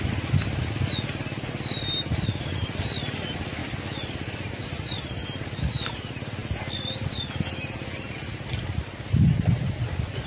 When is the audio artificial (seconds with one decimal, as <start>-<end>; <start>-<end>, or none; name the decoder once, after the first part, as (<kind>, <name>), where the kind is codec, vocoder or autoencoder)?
none